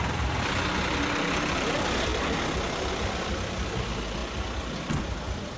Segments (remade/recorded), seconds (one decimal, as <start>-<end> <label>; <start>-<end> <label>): 0.0-5.6 recorded